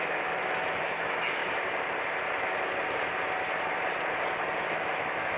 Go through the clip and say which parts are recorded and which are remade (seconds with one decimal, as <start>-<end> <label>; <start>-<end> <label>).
0.0-1.4 remade; 1.4-4.6 recorded; 4.6-5.4 remade